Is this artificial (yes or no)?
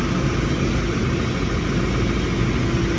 no